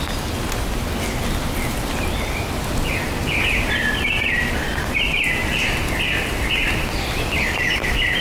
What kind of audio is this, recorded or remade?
recorded